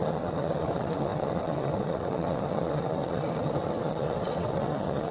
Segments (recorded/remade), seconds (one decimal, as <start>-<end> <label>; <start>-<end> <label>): 0.0-5.1 remade